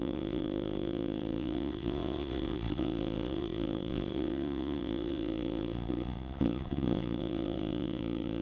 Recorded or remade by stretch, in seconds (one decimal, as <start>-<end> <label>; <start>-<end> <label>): 0.0-8.4 remade